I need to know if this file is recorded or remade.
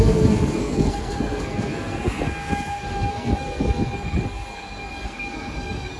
remade